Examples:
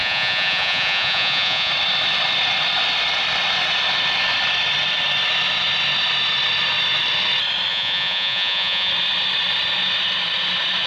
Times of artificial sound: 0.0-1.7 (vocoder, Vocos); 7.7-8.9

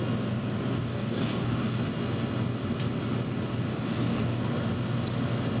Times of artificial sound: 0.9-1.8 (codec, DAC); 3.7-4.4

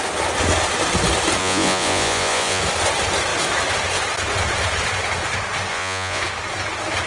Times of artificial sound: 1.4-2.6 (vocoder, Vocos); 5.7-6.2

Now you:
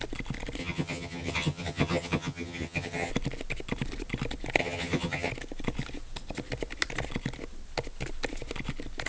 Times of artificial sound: 0.6-3.1 (vocoder, HiFi-GAN); 4.6-5.3

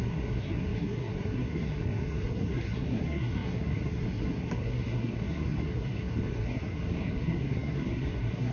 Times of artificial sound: 0.0-8.5 (codec, SNAC)

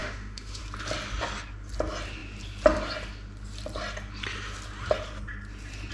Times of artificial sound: 0.0-0.6 (autoencoder, DAC-VAE)

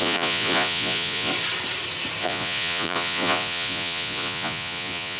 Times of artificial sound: 0.0-1.3 (vocoder, Vocos); 2.2-5.2